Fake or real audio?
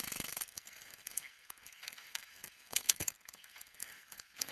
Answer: fake